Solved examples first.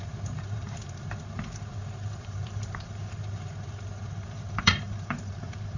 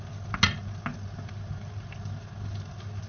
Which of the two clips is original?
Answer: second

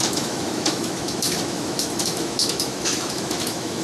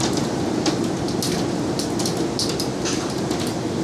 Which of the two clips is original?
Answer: second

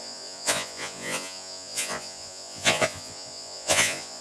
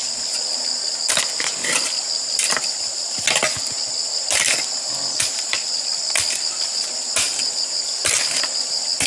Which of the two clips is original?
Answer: second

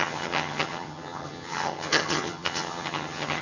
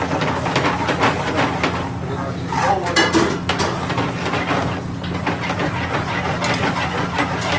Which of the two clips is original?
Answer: second